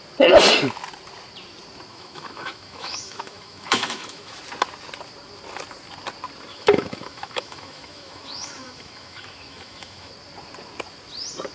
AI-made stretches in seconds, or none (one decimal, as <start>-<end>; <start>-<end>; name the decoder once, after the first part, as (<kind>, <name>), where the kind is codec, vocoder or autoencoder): 1.9-4.4 (autoencoder, DAC-VAE); 6.5-10.1